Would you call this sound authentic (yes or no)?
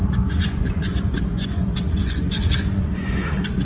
no